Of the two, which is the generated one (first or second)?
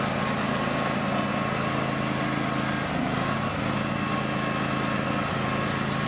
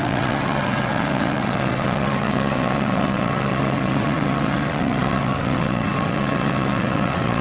second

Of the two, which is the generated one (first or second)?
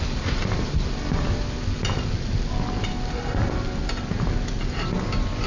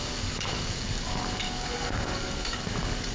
second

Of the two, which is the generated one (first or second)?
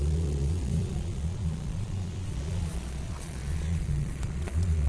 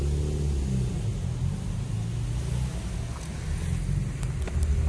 first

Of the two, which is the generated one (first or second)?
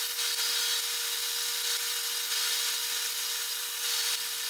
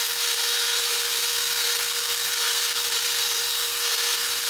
second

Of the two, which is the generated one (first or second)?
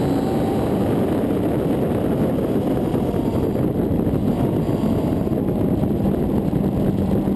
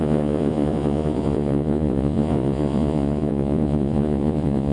second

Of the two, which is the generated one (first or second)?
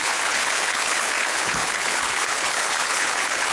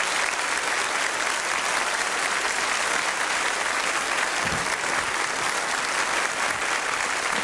first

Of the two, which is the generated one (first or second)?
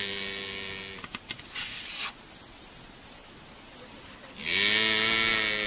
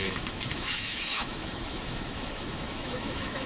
second